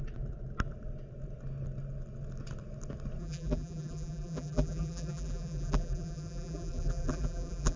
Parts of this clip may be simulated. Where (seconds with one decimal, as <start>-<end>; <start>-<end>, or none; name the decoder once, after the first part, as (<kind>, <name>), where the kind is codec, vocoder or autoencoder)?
3.2-7.8 (vocoder, BigVGAN v2)